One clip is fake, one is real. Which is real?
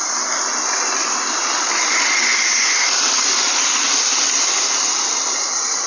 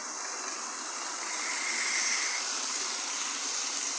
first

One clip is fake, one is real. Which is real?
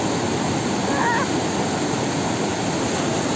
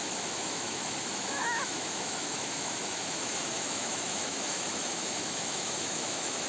first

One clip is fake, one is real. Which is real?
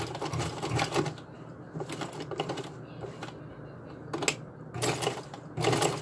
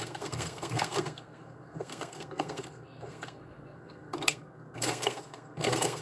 first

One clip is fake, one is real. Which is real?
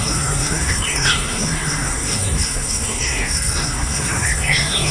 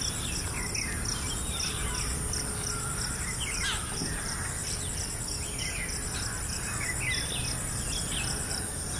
second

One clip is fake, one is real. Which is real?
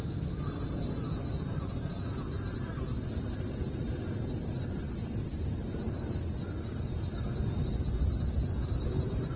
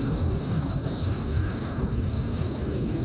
first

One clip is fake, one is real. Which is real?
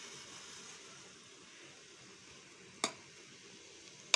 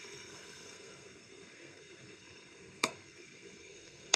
first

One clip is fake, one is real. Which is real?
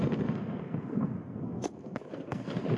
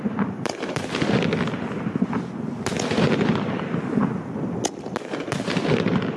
second